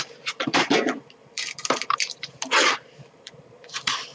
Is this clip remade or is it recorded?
remade